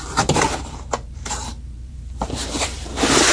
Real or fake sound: fake